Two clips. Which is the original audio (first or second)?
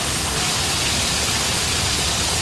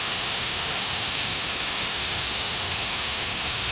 first